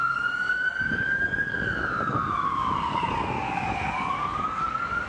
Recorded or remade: remade